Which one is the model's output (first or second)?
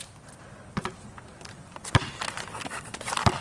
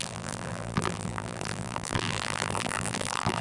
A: second